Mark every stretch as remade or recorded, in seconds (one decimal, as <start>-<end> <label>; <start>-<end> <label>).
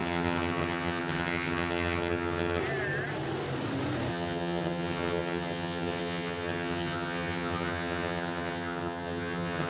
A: 0.0-2.6 remade; 2.6-4.1 recorded; 4.1-9.7 remade